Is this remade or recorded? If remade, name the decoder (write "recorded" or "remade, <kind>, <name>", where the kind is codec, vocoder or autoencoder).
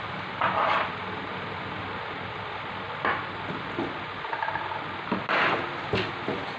recorded